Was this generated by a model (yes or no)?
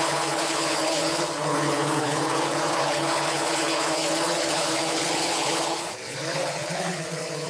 yes